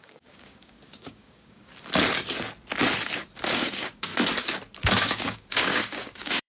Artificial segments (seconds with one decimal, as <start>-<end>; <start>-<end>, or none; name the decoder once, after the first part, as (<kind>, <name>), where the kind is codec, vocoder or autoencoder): 0.0-1.7 (codec, DAC); 3.5-4.1; 4.9-6.5